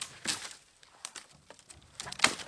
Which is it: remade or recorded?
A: recorded